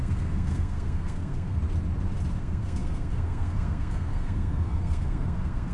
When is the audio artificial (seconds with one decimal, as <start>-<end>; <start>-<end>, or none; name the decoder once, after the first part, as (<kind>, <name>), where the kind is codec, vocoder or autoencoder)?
0.0-1.6 (codec, SNAC); 2.4-5.7